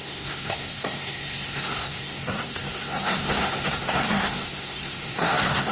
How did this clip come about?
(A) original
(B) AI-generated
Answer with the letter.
B